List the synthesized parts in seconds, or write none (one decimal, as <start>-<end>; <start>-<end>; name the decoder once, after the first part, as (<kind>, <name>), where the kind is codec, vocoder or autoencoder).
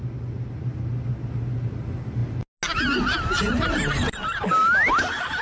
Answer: none